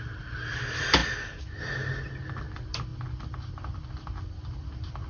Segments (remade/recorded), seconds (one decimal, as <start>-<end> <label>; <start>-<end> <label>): 0.0-5.1 recorded